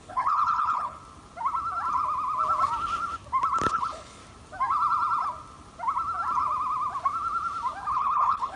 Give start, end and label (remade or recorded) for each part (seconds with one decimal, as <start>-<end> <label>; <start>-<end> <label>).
0.0-1.0 remade; 1.0-3.7 recorded; 3.7-4.2 remade; 4.2-7.9 recorded; 7.9-8.6 remade